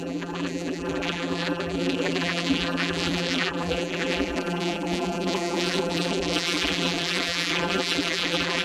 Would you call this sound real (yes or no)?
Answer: no